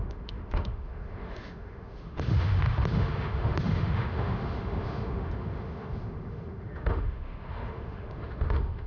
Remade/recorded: remade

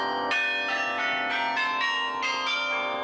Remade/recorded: recorded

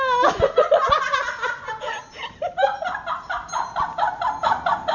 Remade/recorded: recorded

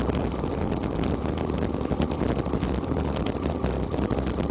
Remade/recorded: recorded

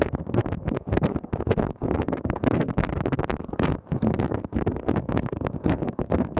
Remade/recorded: remade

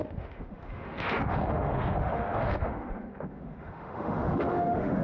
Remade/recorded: remade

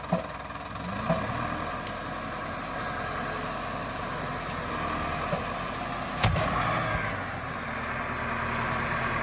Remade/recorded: recorded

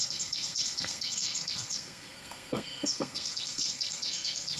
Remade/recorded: remade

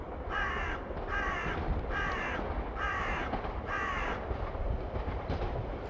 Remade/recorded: remade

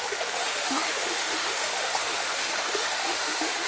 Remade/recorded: remade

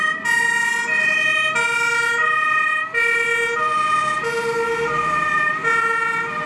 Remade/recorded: recorded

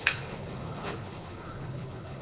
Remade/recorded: remade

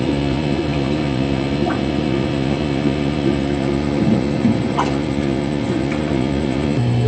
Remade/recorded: remade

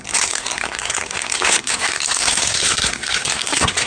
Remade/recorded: remade